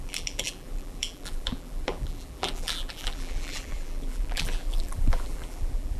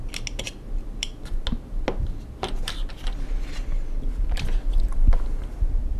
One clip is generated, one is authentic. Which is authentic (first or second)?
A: second